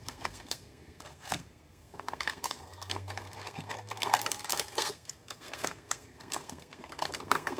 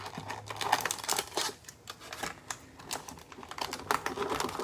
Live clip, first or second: second